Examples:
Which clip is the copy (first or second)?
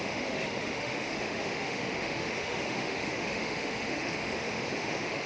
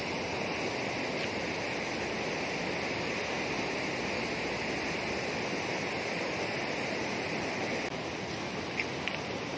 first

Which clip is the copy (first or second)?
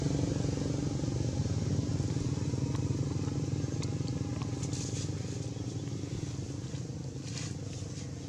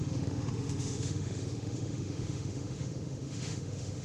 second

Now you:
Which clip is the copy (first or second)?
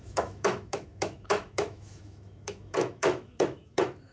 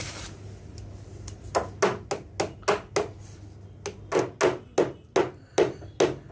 first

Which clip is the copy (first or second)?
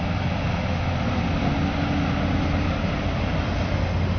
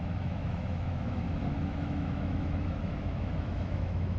second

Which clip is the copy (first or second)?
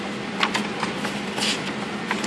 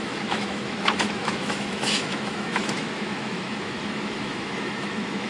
second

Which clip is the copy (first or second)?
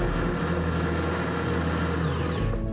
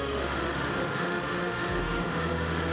second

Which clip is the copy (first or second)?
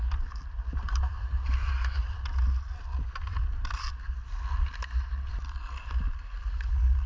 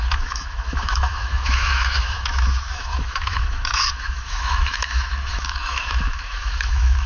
second